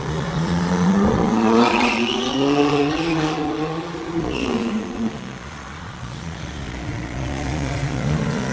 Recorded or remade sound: remade